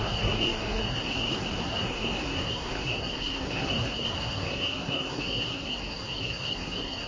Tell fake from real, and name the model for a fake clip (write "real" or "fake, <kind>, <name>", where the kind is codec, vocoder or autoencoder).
fake, codec, SNAC